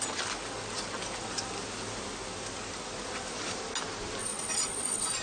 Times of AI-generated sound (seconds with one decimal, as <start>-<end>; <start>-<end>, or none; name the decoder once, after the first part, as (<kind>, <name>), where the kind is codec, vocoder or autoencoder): 4.2-5.2 (vocoder, Vocos)